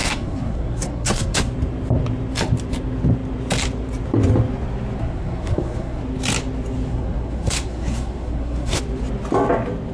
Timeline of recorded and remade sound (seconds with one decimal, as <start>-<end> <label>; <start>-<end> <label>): 0.0-1.5 remade; 1.5-5.0 recorded; 5.0-6.0 remade; 6.0-6.9 recorded; 6.9-8.8 remade; 8.8-9.9 recorded

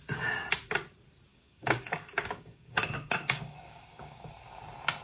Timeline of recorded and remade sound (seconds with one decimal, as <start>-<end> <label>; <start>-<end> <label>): 0.0-1.3 recorded; 1.3-4.3 remade; 4.3-5.0 recorded

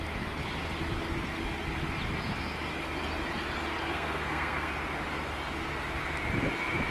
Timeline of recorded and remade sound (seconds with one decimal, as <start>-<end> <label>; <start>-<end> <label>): 0.0-3.9 recorded; 3.9-4.7 remade; 4.7-6.9 recorded

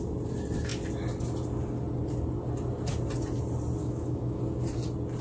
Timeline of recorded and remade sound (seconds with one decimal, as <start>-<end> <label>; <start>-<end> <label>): 0.0-3.8 recorded; 3.8-4.4 remade; 4.4-5.2 recorded